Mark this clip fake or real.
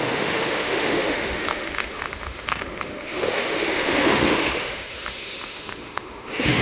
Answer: fake